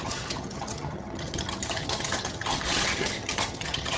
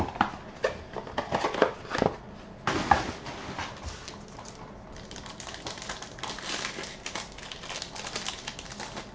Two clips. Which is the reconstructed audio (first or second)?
first